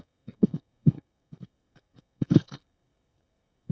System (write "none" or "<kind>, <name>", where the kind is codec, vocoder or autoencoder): codec, SNAC